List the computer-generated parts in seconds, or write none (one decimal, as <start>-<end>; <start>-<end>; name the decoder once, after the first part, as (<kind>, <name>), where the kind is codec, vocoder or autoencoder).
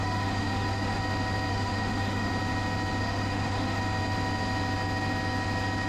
0.0-1.0 (autoencoder, DAC-VAE); 1.5-2.3; 3.0-3.8